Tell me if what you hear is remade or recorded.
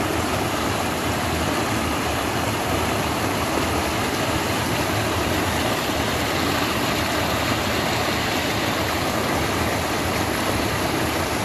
recorded